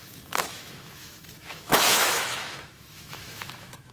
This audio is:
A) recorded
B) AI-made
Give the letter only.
B